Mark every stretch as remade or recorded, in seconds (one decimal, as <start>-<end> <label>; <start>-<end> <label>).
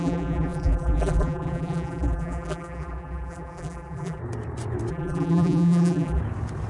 0.0-4.2 remade; 4.2-4.9 recorded; 4.9-6.2 remade; 6.2-6.7 recorded